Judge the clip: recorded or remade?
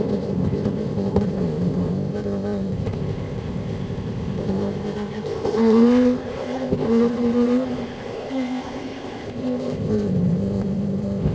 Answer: remade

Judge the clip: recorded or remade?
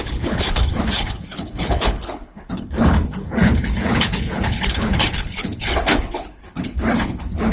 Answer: remade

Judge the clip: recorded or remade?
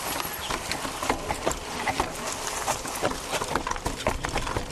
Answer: recorded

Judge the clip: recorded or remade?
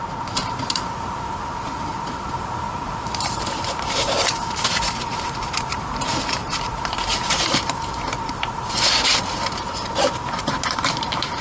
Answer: remade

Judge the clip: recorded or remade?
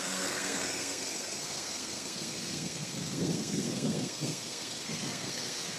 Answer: remade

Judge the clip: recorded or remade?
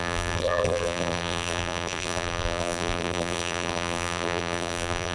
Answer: remade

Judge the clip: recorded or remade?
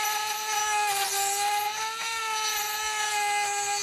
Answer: recorded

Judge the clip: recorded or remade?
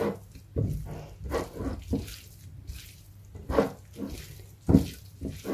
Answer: recorded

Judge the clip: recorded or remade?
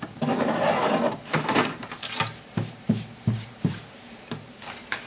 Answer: remade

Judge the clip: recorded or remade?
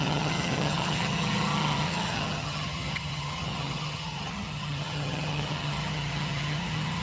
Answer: remade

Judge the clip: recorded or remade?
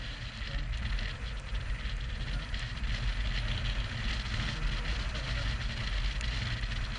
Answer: recorded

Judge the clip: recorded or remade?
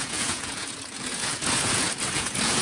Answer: remade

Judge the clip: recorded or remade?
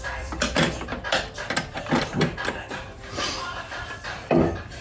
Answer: remade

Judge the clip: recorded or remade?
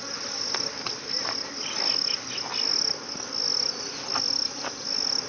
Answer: recorded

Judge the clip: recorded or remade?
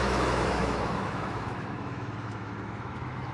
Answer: remade